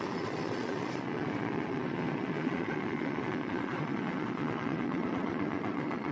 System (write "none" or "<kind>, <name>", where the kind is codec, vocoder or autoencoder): vocoder, Vocos